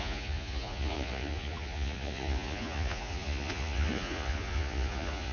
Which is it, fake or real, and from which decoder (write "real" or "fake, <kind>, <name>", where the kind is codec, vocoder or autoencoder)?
fake, vocoder, Vocos